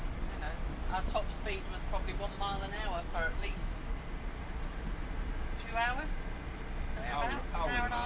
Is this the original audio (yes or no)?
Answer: yes